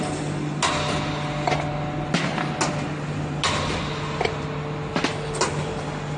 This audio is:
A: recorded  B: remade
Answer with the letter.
A